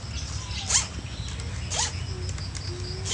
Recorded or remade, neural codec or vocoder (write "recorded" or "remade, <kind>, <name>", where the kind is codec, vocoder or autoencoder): recorded